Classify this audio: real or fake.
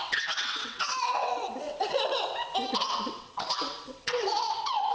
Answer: fake